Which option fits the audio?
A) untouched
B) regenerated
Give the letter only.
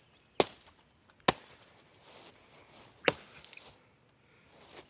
A